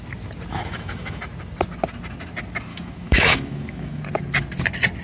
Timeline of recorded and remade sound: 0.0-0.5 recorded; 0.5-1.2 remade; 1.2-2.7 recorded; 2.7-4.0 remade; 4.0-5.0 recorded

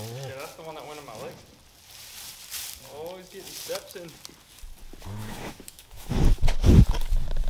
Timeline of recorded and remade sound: 0.0-5.2 recorded; 5.2-6.2 remade; 6.2-7.5 recorded